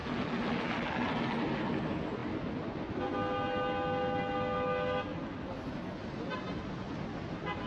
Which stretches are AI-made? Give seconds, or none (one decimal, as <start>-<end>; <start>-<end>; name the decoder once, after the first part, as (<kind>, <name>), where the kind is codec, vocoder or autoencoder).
none

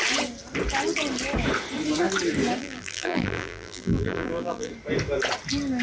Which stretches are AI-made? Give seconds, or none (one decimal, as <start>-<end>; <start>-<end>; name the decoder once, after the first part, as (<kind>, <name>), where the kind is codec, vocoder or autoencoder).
2.6-4.7 (vocoder, BigVGAN v2)

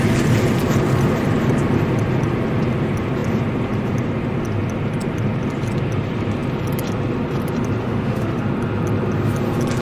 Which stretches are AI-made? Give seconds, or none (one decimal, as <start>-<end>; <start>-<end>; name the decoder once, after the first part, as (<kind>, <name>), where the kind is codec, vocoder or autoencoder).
7.8-8.4 (autoencoder, DAC-VAE)

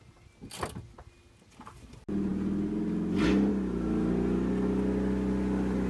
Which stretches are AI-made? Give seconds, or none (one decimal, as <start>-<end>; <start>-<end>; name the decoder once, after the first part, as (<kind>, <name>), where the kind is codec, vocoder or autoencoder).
none

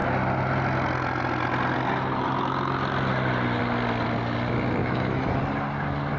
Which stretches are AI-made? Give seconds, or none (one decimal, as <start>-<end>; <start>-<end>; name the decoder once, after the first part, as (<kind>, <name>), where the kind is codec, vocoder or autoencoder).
4.8-5.4 (autoencoder, DAC-VAE)

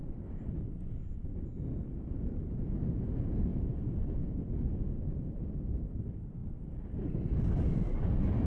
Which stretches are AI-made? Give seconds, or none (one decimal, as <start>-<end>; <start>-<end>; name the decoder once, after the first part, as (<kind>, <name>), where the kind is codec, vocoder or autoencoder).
3.5-4.2 (vocoder, BigVGAN v2)

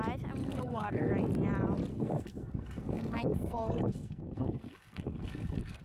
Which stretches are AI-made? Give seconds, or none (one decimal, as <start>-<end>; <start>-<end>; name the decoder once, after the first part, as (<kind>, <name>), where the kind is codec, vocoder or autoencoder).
0.4-1.1 (codec, SNAC); 1.9-5.8

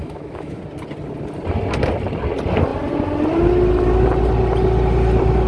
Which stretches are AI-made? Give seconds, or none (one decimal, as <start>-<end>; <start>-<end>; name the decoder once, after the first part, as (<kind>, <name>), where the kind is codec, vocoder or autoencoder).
0.0-0.6 (autoencoder, DAC-VAE)